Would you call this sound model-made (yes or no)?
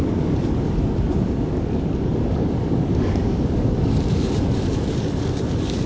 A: yes